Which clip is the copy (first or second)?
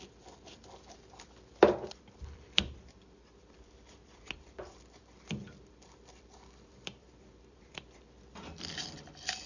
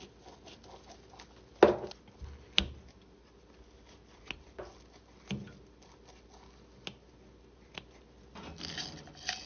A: first